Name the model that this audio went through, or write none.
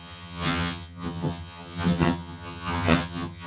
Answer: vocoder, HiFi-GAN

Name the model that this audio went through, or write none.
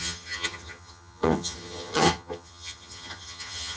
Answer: vocoder, HiFi-GAN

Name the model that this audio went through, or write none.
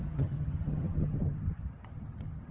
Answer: vocoder, HiFi-GAN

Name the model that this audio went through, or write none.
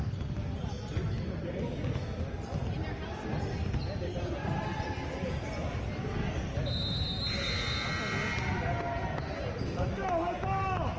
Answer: none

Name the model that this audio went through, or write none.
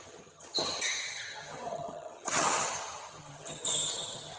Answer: vocoder, HiFi-GAN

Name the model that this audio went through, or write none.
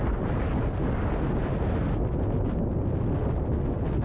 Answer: none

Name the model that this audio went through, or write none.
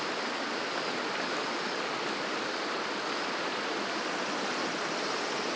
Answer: none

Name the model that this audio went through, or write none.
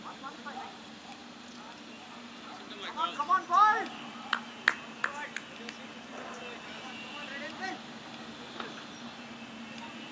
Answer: none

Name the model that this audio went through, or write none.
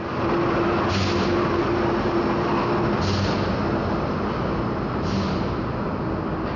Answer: none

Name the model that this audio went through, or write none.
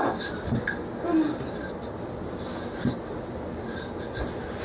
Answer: none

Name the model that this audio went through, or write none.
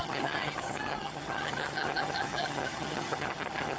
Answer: vocoder, HiFi-GAN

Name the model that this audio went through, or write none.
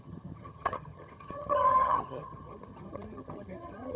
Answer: vocoder, HiFi-GAN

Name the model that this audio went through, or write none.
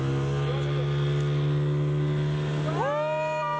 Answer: none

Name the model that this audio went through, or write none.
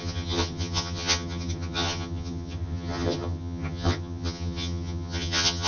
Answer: vocoder, HiFi-GAN